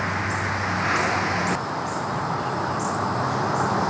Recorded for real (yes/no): yes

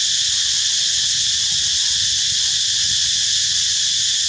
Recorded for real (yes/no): yes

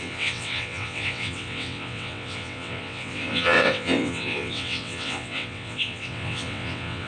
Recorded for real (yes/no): no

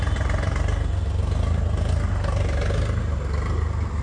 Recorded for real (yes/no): yes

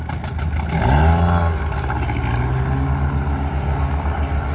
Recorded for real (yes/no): yes